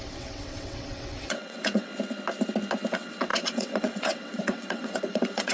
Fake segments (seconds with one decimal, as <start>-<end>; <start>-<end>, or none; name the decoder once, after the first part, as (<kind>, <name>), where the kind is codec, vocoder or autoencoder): 0.0-1.9 (vocoder, WaveNeXt); 2.9-5.5